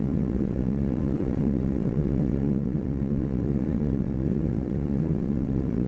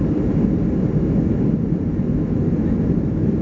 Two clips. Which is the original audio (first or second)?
second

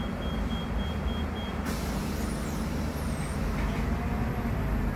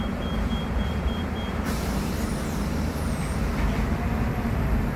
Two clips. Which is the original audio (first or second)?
first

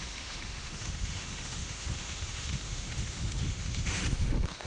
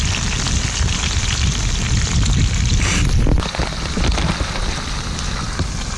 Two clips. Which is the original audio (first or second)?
second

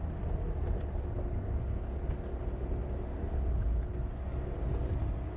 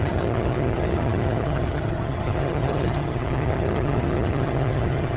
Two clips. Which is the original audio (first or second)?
first